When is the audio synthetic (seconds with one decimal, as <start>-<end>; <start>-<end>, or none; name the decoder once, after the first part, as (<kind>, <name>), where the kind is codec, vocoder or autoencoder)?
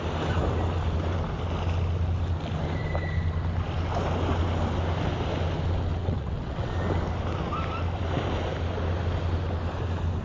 5.9-6.7 (vocoder, WaveNeXt)